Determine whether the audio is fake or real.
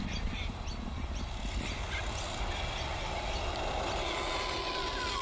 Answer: real